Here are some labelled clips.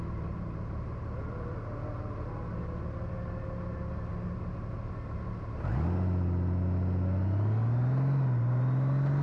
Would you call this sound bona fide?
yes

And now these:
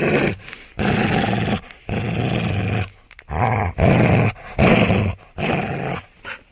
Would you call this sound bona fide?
yes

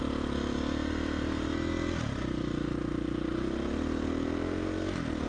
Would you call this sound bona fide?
yes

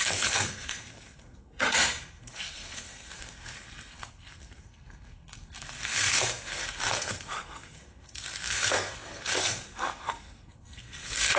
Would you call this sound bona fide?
no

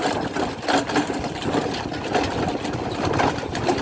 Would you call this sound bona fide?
yes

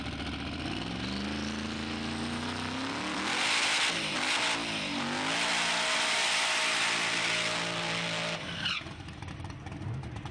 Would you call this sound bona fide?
yes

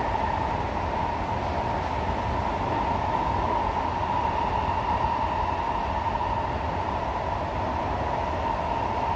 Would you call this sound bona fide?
yes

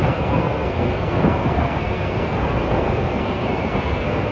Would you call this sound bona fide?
no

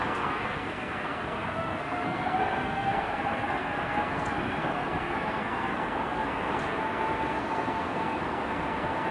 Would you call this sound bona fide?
no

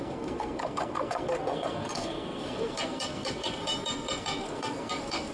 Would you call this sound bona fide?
no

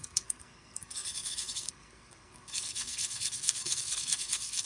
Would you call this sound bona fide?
no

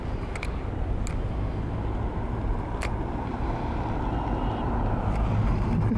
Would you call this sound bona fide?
yes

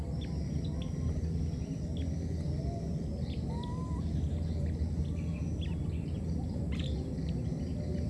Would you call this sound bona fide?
yes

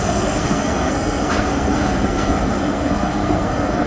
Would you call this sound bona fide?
no